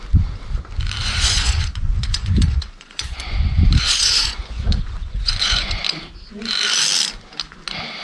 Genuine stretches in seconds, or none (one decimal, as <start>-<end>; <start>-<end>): 0.0-1.0; 5.8-8.0